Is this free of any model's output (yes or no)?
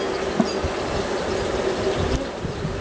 yes